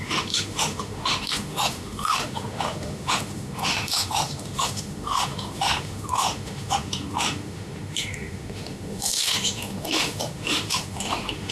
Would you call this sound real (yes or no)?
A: no